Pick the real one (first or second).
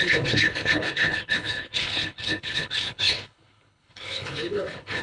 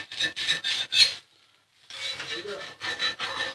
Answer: second